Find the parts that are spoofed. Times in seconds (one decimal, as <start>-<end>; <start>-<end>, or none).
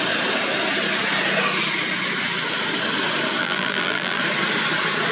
3.4-4.2